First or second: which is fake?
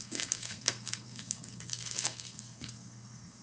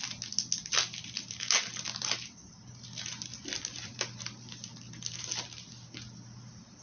first